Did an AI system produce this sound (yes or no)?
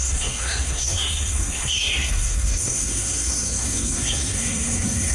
yes